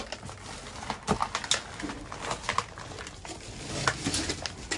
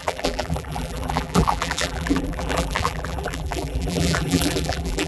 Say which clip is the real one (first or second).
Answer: first